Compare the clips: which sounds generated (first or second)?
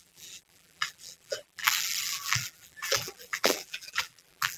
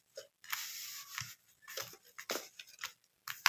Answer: first